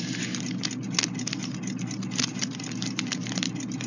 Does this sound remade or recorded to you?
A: recorded